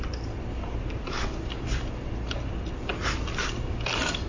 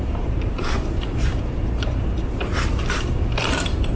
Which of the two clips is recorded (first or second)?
first